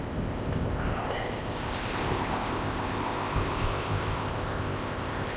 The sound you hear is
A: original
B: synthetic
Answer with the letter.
B